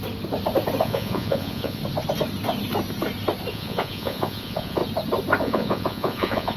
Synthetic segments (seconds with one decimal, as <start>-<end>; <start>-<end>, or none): 0.8-1.8; 3.5-4.8; 5.4-6.6